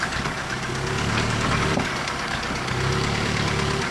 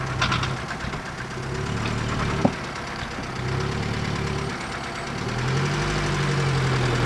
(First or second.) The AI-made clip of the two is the first